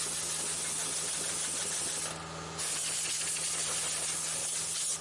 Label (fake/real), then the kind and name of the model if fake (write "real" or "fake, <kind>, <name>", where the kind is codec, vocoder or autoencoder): real